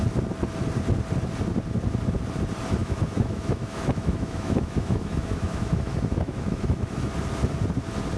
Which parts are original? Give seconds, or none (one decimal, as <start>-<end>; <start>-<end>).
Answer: 0.0-2.8; 7.1-8.2